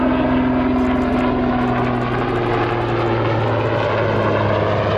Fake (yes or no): no